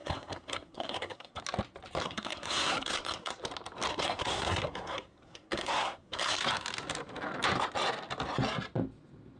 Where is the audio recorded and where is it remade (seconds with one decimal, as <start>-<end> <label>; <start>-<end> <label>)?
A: 0.0-1.4 remade; 1.4-2.0 recorded; 2.0-3.4 remade; 3.4-3.9 recorded; 3.9-6.5 remade; 6.5-9.4 recorded